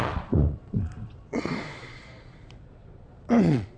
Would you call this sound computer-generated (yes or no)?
yes